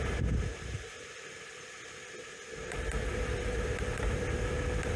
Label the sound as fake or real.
real